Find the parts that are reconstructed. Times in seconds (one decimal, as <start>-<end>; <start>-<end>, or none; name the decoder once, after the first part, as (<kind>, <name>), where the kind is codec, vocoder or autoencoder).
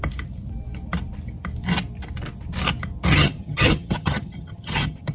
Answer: 3.1-5.1 (vocoder, HiFi-GAN)